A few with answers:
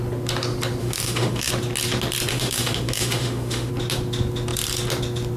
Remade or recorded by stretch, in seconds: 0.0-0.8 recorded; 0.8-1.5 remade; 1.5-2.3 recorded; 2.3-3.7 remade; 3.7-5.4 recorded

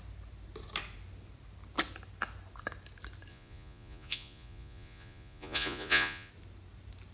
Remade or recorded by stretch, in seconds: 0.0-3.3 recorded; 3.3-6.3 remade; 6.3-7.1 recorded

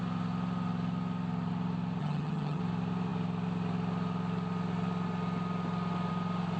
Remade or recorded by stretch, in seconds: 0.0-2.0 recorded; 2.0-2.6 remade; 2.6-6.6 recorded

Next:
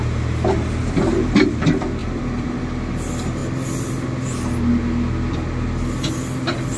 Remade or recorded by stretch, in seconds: 0.0-0.8 recorded; 0.8-1.5 remade; 1.5-2.0 recorded; 2.0-2.6 remade; 2.6-6.8 recorded

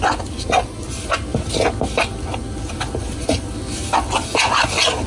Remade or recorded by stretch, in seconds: 0.0-5.1 recorded

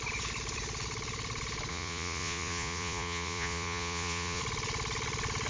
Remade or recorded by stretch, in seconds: 0.0-1.7 recorded; 1.7-4.4 remade; 4.4-5.5 recorded

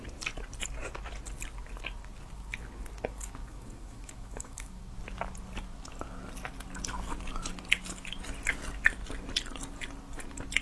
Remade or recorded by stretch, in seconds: 0.0-3.4 recorded; 3.4-4.8 remade; 4.8-10.6 recorded

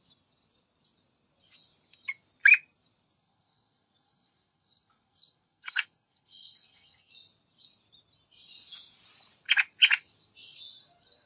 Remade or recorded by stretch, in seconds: 0.0-3.2 recorded; 3.2-7.1 remade; 7.1-11.3 recorded